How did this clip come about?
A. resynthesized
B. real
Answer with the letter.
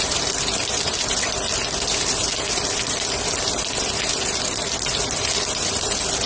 A